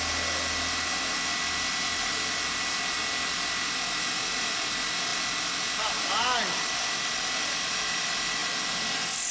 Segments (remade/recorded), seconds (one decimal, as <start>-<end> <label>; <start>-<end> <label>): 0.0-5.1 recorded; 5.1-8.0 remade; 8.0-9.3 recorded